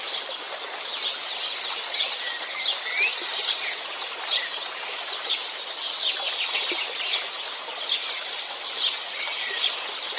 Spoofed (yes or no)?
no